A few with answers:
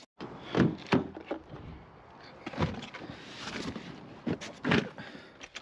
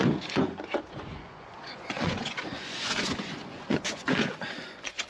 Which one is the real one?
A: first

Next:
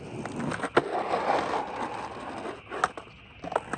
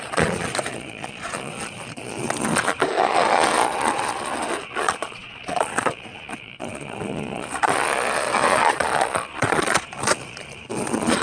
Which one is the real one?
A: first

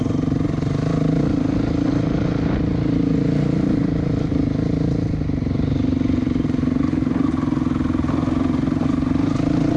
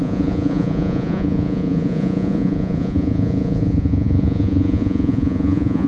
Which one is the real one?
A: first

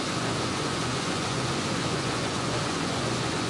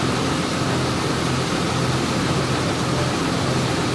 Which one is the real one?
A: second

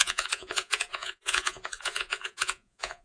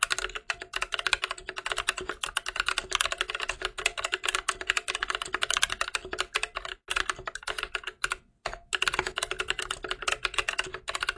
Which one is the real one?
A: second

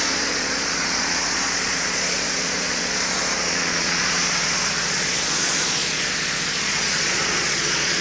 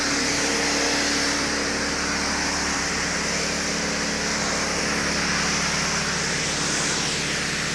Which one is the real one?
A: second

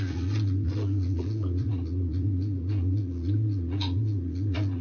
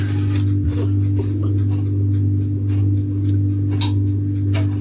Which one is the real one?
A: second